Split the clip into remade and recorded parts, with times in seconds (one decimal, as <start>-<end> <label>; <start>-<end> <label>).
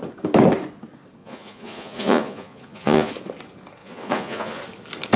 0.0-1.2 recorded; 1.2-3.1 remade; 3.1-3.8 recorded; 3.8-4.6 remade; 4.6-5.2 recorded